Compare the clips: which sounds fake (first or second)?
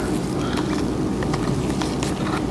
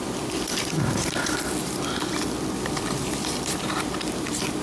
second